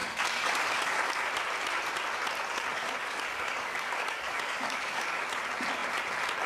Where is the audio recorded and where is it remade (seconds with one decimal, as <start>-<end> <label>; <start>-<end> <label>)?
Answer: 0.0-1.3 remade; 1.3-2.7 recorded; 2.7-5.2 remade; 5.2-6.5 recorded